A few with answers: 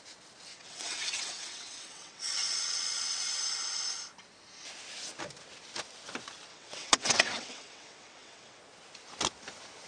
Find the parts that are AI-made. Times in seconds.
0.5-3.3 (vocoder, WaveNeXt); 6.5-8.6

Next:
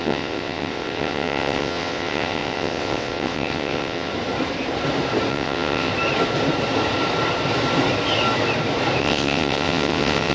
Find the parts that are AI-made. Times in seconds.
0.0-4.1 (vocoder, WaveNeXt); 5.3-5.9; 9.0-10.3

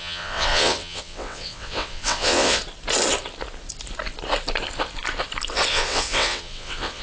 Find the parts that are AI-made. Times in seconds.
0.0-2.6 (vocoder, WaveNeXt); 5.7-7.0